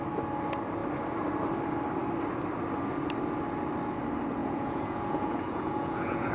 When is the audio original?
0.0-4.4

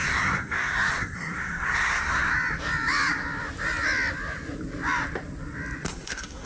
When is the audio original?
2.3-5.9

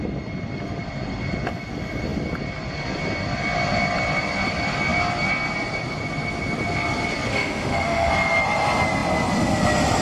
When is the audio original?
0.0-7.3; 8.1-10.0

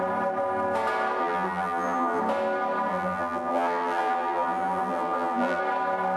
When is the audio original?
0.0-1.2; 2.2-2.9; 5.6-6.2

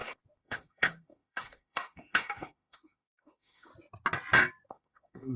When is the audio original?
3.7-4.7

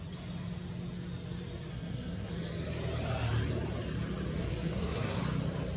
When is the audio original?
0.0-1.7; 2.3-4.4; 5.2-5.8

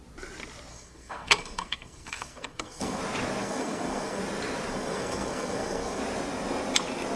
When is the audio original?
0.0-0.7; 3.0-3.4; 4.2-4.7; 6.0-7.2

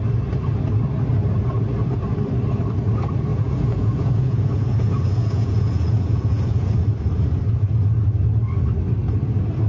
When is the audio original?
0.0-3.3; 6.7-9.7